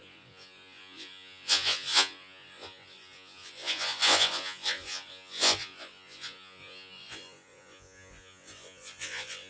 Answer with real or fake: fake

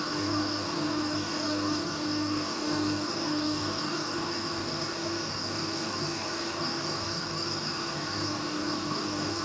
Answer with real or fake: fake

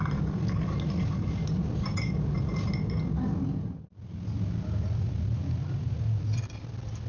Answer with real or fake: real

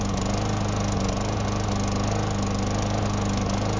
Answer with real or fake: real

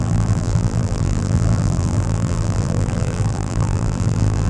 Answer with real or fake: fake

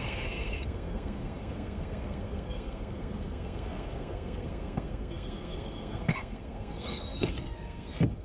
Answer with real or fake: fake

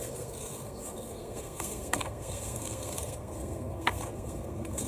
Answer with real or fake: fake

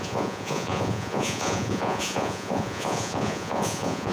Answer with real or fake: fake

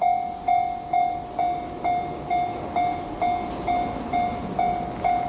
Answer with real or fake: real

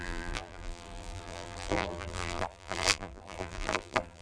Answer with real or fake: fake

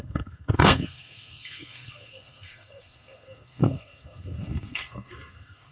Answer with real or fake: fake